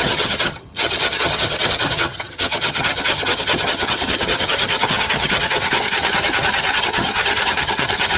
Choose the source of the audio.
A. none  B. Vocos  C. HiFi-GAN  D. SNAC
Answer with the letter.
C